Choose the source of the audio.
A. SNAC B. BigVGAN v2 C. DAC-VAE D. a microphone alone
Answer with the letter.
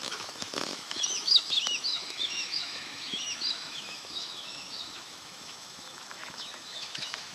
C